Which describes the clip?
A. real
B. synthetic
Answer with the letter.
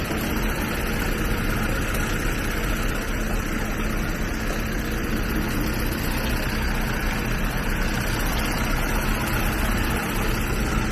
A